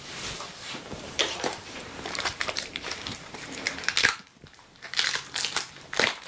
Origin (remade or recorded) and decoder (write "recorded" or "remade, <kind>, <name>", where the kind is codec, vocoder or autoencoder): remade, vocoder, BigVGAN v2